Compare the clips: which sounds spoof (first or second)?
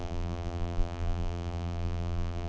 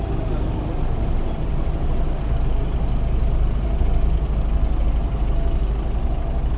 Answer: first